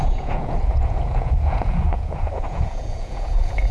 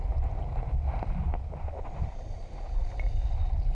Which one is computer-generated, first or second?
first